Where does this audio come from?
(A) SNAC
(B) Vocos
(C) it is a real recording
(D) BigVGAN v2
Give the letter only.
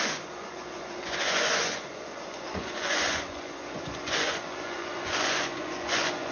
B